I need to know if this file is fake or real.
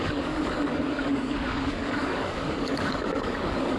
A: fake